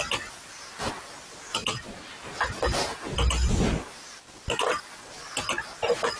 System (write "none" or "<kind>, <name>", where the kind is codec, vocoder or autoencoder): none